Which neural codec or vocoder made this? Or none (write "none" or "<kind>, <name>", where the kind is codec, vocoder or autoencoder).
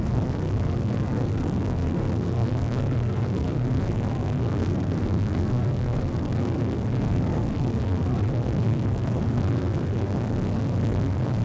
codec, SNAC